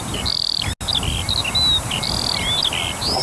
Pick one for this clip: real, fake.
real